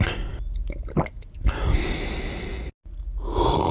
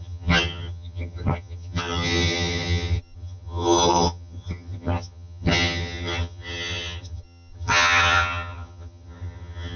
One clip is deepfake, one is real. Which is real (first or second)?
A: first